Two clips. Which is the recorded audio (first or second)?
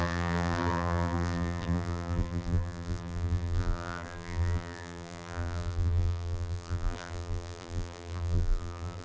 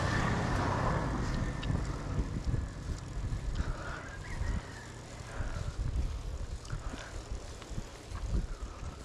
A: second